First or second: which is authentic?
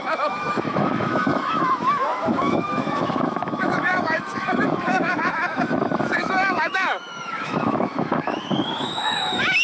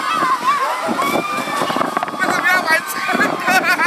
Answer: second